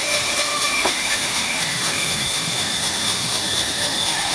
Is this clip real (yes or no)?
no